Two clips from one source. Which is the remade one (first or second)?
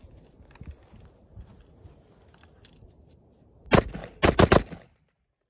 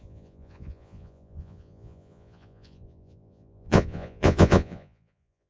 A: second